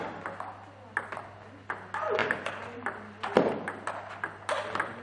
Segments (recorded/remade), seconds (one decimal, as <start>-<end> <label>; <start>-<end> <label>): 0.0-5.0 recorded